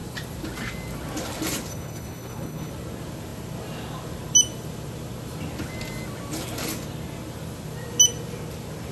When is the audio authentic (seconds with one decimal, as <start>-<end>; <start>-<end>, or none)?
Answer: 0.0-1.7; 2.7-8.9